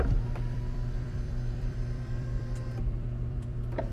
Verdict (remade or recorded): remade